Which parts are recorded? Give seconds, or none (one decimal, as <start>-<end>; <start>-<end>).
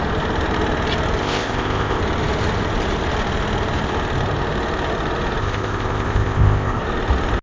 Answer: 0.0-1.2; 2.0-5.4; 6.8-7.4